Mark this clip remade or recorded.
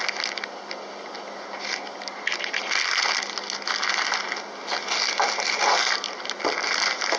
recorded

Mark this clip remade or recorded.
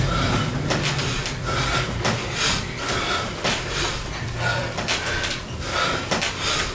recorded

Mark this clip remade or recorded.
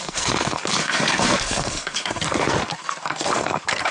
remade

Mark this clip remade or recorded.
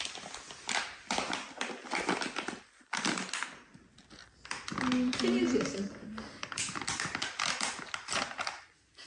recorded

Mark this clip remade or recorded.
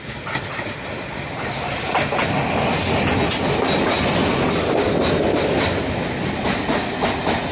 recorded